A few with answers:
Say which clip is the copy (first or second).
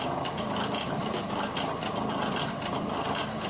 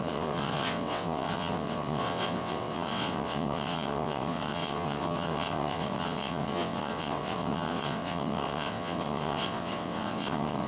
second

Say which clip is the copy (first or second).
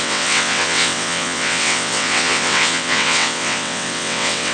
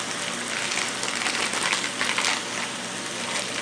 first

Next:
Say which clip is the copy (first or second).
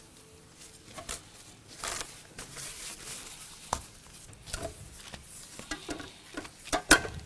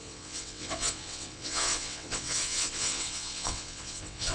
second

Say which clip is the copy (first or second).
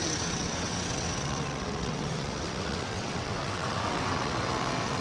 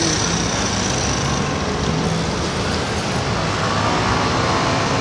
first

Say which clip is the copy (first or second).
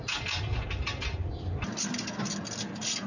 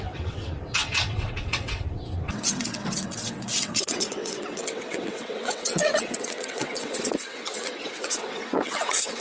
second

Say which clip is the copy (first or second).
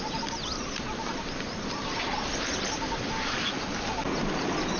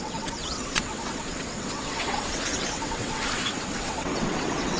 second